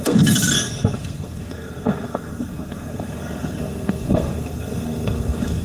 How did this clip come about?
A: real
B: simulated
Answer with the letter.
B